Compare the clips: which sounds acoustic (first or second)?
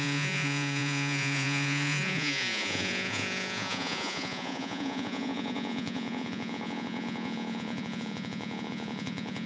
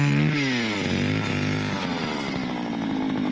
second